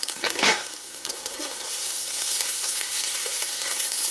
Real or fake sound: fake